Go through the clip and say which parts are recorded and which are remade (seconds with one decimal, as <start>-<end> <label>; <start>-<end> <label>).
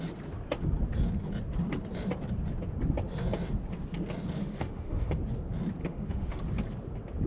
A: 0.0-4.4 recorded; 4.4-5.2 remade; 5.2-5.8 recorded; 5.8-6.4 remade; 6.4-7.3 recorded